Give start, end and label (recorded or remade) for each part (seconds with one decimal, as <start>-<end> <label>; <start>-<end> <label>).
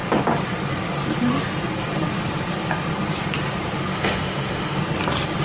0.0-3.9 recorded; 3.9-4.8 remade; 4.8-5.4 recorded